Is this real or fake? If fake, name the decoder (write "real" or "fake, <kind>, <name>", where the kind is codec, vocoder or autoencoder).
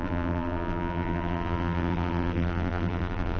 fake, vocoder, BigVGAN v2